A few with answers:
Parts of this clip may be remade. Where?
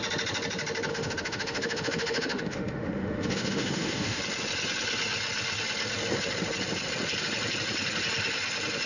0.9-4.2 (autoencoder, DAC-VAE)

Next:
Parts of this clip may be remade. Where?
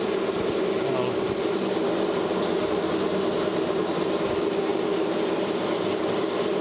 none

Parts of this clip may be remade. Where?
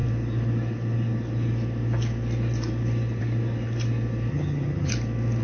4.3-4.9 (vocoder, HiFi-GAN)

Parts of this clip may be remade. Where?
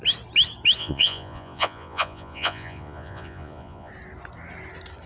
0.8-3.9 (vocoder, Vocos)